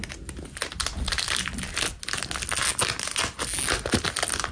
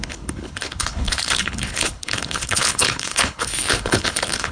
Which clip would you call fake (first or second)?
second